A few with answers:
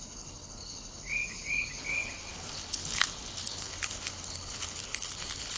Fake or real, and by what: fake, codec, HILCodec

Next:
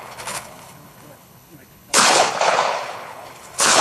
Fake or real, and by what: fake, codec, HILCodec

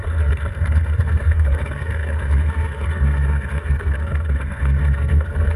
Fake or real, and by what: fake, codec, SNAC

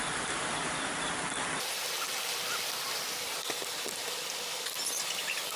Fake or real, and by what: real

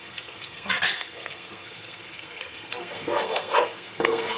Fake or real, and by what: fake, codec, SNAC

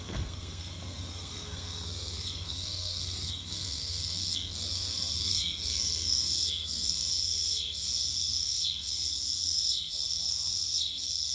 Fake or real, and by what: fake, codec, SNAC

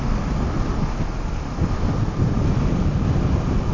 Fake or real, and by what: real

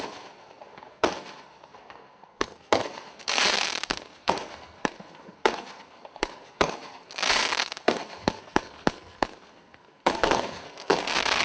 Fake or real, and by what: fake, codec, SNAC